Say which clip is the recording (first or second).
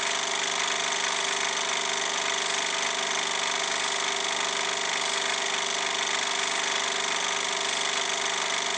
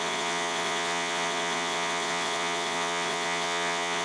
first